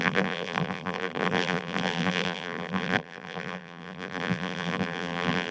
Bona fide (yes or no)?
no